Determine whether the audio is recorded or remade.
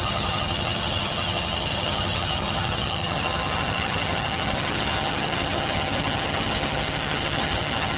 remade